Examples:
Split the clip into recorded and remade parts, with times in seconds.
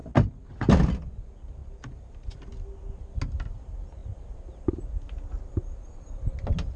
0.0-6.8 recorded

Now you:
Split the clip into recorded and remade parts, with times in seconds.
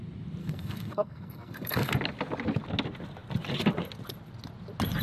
0.0-0.4 recorded; 0.4-1.9 remade; 1.9-5.0 recorded